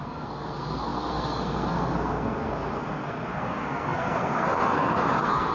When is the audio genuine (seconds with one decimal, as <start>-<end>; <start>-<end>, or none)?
none